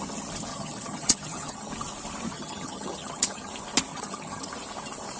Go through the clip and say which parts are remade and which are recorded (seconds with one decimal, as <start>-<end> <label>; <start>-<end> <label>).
0.0-0.5 recorded; 0.5-1.7 remade; 1.7-2.3 recorded; 2.3-3.5 remade; 3.5-3.9 recorded; 3.9-4.5 remade; 4.5-5.2 recorded